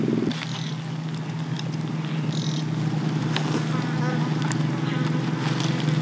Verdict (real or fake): real